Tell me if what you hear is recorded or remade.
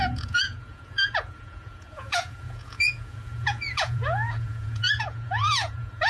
remade